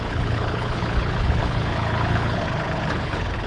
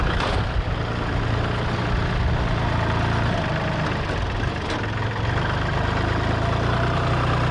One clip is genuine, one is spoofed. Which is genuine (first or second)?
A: second